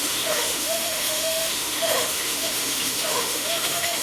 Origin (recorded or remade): remade